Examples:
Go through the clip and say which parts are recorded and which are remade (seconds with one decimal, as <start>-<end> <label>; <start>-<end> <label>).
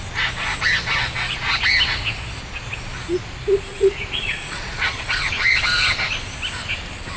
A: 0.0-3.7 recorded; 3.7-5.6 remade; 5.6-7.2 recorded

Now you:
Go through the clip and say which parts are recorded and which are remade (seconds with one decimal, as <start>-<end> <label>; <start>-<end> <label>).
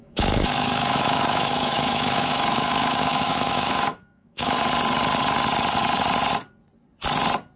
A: 0.0-4.6 remade; 4.6-7.6 recorded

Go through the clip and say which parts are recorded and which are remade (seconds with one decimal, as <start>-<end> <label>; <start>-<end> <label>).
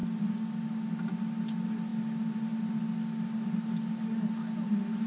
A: 0.0-5.1 recorded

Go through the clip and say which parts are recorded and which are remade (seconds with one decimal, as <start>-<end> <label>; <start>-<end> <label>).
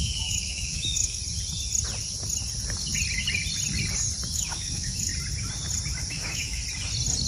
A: 0.0-1.2 remade; 1.2-4.3 recorded; 4.3-5.1 remade; 5.1-6.1 recorded; 6.1-6.6 remade; 6.6-7.3 recorded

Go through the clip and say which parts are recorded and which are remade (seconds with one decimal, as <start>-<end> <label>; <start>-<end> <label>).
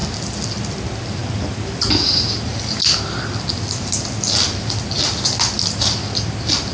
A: 0.0-6.7 recorded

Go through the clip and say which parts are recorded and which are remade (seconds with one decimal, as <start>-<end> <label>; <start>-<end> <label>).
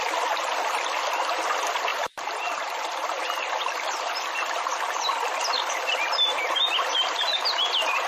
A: 0.0-1.9 recorded; 1.9-2.4 remade; 2.4-6.9 recorded; 6.9-7.4 remade; 7.4-8.1 recorded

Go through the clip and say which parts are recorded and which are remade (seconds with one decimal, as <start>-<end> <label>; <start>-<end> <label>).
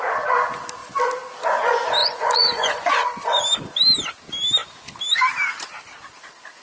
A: 0.0-2.0 recorded; 2.0-3.4 remade; 3.4-6.6 recorded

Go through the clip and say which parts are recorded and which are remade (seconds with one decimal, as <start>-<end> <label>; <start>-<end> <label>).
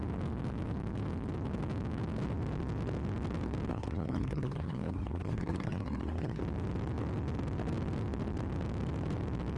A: 0.0-3.7 recorded; 3.7-6.4 remade; 6.4-9.6 recorded